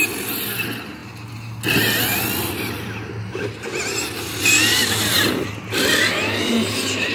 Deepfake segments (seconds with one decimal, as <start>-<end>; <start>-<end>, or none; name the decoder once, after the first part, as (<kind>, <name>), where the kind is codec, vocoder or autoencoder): 4.8-5.5 (vocoder, BigVGAN v2)